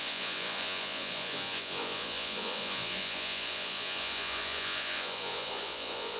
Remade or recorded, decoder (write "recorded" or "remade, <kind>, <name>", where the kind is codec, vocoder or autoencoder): remade, vocoder, Vocos